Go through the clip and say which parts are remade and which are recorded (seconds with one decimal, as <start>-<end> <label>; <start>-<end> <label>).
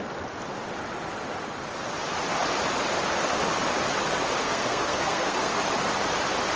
0.0-4.4 recorded; 4.4-5.6 remade; 5.6-6.6 recorded